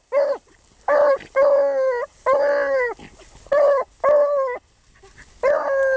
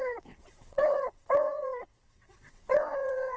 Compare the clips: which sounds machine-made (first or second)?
second